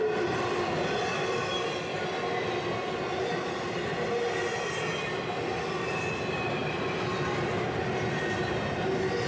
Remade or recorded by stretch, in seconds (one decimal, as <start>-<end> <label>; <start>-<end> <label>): 0.0-9.3 recorded